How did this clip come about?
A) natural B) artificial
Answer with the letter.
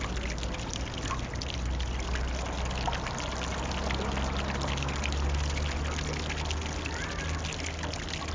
A